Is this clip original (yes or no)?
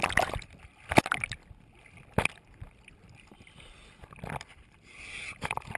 yes